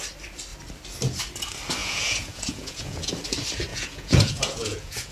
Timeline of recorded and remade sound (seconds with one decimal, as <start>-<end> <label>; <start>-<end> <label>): 0.0-1.8 recorded; 1.8-3.1 remade; 3.1-3.7 recorded; 3.7-5.1 remade